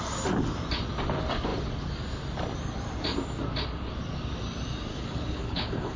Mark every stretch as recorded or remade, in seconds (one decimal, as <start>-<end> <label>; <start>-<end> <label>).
0.0-4.9 recorded; 4.9-6.0 remade